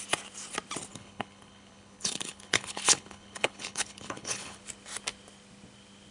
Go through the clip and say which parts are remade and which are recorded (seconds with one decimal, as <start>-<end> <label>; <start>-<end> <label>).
0.0-0.9 recorded; 0.9-4.6 remade; 4.6-6.1 recorded